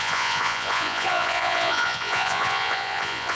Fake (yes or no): yes